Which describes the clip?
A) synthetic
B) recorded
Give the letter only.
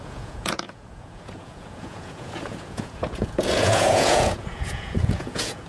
A